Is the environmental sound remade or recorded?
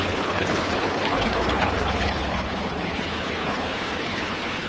remade